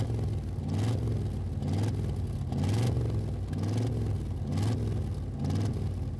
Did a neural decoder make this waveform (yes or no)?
no